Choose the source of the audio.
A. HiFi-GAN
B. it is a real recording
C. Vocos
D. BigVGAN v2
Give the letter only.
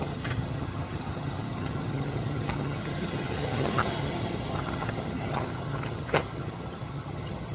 A